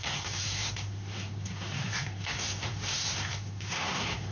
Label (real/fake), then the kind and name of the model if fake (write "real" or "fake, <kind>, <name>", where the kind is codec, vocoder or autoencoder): fake, codec, SNAC